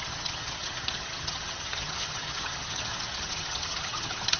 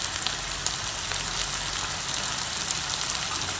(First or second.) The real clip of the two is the second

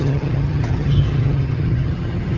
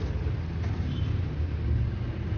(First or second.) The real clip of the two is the second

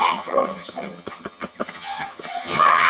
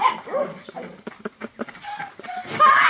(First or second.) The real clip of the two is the second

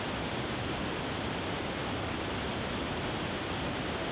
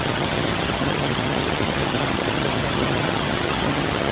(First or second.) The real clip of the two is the first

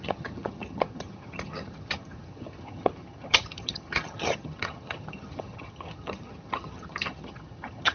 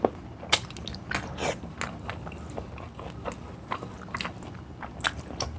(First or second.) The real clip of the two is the second